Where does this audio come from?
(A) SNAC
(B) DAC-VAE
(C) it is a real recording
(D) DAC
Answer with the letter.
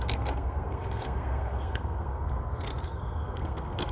A